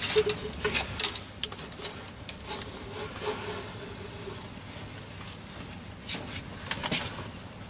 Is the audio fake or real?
real